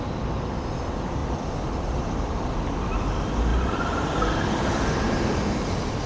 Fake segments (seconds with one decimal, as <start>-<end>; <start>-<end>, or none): 1.2-2.5; 3.5-4.2